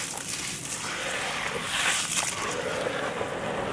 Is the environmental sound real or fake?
real